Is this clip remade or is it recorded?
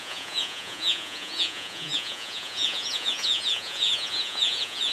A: remade